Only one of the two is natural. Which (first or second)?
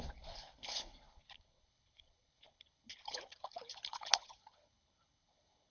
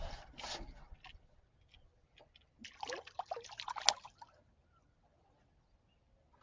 second